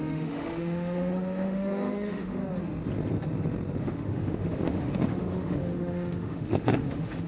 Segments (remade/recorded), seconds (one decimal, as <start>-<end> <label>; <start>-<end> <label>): 0.0-2.4 remade; 2.4-3.8 recorded; 3.8-7.3 remade